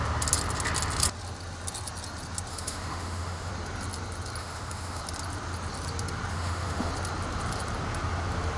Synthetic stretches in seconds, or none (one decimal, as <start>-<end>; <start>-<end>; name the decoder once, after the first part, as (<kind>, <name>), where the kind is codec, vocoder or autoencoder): 2.5-3.5 (autoencoder, DAC-VAE); 4.4-5.0; 6.3-6.9

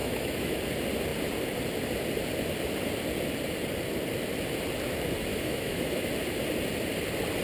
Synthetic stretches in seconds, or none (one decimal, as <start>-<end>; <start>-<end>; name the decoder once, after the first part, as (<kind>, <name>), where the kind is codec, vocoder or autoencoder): 0.0-0.6 (autoencoder, DAC-VAE); 5.3-6.1

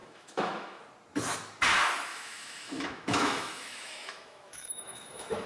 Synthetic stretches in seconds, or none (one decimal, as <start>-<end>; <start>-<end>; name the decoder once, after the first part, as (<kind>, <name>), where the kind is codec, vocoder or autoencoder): 0.0-0.8 (autoencoder, DAC-VAE); 2.1-5.5

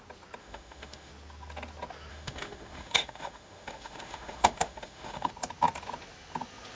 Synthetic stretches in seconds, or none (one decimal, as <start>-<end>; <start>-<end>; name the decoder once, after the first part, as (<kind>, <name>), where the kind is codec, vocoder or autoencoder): 0.4-1.1 (autoencoder, DAC-VAE); 2.1-5.3

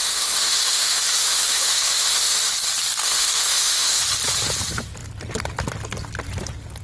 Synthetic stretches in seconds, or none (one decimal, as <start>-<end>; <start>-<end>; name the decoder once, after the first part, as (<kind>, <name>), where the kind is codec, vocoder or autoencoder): 0.0-2.5 (autoencoder, DAC-VAE); 3.0-4.0